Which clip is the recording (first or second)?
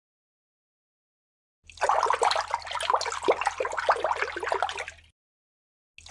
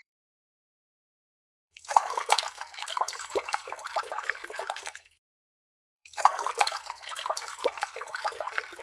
first